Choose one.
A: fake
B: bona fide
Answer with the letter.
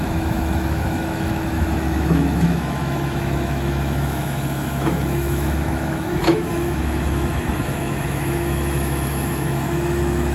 A